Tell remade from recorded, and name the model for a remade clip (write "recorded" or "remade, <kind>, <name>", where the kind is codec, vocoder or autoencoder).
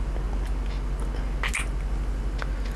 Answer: recorded